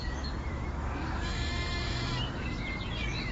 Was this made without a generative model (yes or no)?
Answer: no